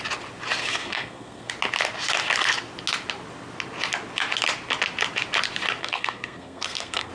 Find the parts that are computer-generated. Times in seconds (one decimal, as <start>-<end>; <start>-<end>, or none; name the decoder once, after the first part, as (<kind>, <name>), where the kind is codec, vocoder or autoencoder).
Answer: 0.6-1.5 (codec, SNAC); 5.8-7.1